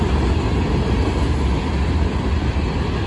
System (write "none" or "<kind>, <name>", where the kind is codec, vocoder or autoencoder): none